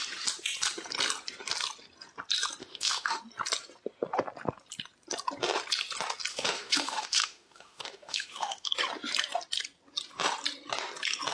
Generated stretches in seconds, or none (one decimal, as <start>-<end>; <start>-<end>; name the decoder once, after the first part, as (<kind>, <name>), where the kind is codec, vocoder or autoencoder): 2.6-3.2 (autoencoder, DAC-VAE); 6.3-8.7